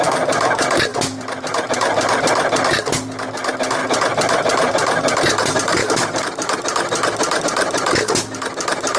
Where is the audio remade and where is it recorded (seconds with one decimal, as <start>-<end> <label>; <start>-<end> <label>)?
0.0-0.9 recorded; 0.9-2.2 remade; 2.2-3.8 recorded; 3.8-7.4 remade; 7.4-9.0 recorded